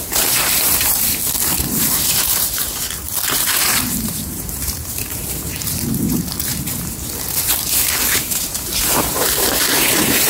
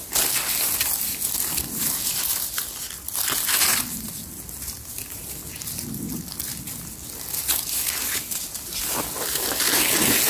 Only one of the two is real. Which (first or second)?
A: second